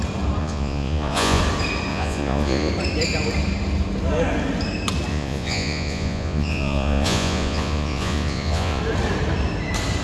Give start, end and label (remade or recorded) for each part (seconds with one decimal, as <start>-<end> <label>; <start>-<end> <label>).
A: 0.0-0.4 recorded; 0.4-1.4 remade; 1.4-1.9 recorded; 1.9-2.7 remade; 2.7-5.1 recorded; 5.1-8.8 remade; 8.8-10.0 recorded